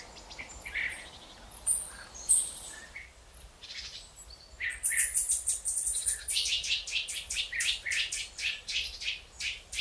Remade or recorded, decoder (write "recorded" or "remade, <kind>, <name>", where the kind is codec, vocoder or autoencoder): recorded